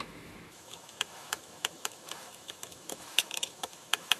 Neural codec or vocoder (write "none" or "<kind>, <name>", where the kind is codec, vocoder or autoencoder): autoencoder, DAC-VAE